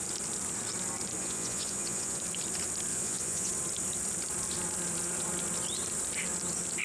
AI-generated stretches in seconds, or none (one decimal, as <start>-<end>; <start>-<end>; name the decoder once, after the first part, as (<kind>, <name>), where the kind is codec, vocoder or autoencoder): 1.2-2.2 (vocoder, Vocos); 2.9-3.5